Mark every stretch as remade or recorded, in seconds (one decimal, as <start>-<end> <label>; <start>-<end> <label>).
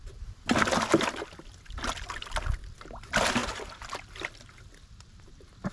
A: 0.0-5.7 recorded